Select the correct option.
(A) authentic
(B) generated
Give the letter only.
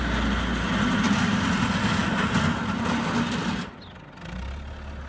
A